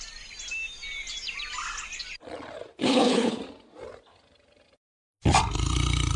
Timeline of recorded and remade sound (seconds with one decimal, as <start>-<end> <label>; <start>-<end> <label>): 0.0-2.8 recorded; 2.8-3.4 remade; 3.4-6.2 recorded